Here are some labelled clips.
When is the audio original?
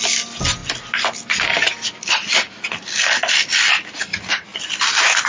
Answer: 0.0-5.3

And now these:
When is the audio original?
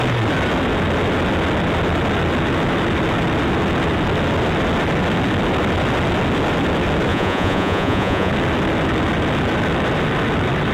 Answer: 0.0-7.1; 8.3-10.7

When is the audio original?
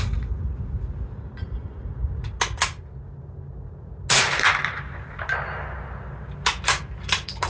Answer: 0.0-7.5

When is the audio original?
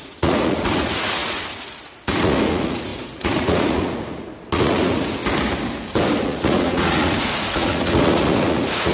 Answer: 5.2-6.2